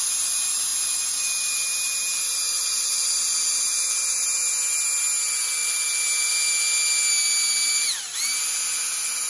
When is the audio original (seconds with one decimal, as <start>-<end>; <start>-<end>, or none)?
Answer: 0.0-2.6; 3.2-5.6; 6.3-9.3